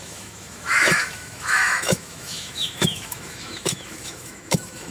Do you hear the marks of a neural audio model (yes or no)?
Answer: yes